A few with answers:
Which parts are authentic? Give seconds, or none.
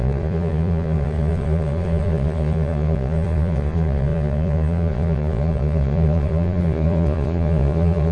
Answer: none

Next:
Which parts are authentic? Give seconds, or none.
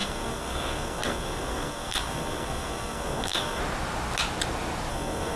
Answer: 3.6-4.9